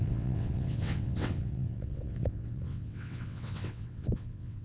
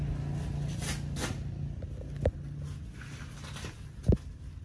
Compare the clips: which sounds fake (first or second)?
first